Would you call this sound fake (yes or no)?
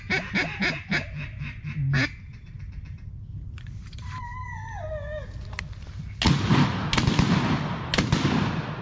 no